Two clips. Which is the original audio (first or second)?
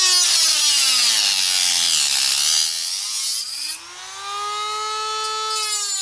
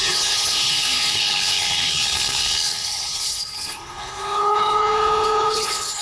first